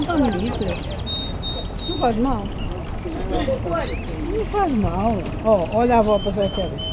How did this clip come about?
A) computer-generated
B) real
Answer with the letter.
B